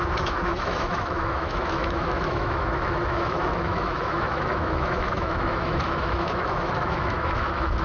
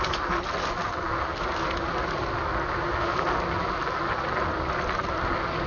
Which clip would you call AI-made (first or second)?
first